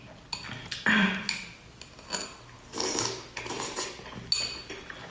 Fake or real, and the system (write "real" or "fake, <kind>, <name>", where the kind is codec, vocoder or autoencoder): real